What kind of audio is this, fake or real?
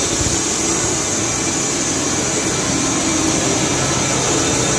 real